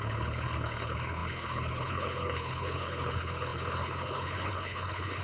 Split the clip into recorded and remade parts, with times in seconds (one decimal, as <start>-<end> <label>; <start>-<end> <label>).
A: 0.0-5.2 remade